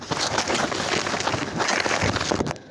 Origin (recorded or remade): recorded